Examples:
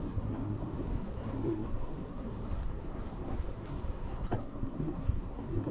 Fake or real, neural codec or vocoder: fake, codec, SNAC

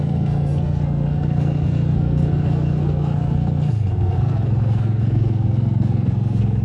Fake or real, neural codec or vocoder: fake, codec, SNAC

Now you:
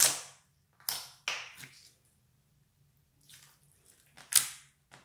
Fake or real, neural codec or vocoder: real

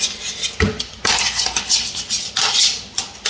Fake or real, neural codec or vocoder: real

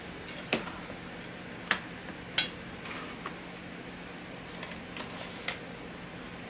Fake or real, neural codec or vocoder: real